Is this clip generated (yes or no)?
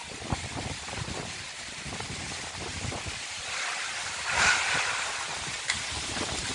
no